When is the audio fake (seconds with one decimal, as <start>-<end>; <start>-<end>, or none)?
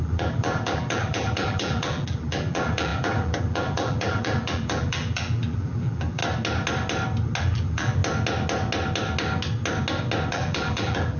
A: 0.0-6.2; 7.4-8.0; 10.3-11.2